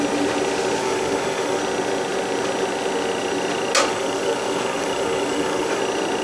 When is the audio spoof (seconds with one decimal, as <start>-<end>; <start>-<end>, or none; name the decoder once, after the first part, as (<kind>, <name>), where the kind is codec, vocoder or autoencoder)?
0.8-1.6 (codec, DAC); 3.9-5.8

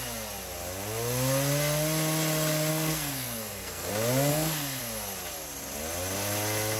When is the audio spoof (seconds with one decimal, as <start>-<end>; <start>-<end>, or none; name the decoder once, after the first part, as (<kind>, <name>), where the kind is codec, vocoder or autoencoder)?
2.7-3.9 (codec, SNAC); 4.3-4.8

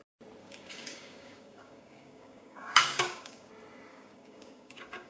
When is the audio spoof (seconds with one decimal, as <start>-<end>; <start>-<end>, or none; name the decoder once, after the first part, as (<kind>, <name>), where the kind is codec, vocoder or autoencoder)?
0.4-3.5 (codec, DAC); 3.9-5.1

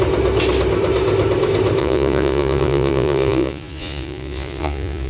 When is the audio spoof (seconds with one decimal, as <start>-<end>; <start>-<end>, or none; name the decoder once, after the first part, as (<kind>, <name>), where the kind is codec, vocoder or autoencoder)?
1.8-5.1 (vocoder, Vocos)